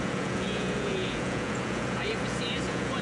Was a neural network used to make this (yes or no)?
yes